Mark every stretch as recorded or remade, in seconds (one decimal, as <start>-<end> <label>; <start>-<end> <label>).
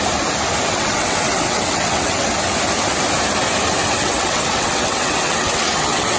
0.0-0.7 recorded; 0.7-2.3 remade; 2.3-3.8 recorded; 3.8-6.2 remade